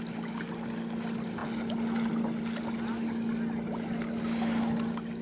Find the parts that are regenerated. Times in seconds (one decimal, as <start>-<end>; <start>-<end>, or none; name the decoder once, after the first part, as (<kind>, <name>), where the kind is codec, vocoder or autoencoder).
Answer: none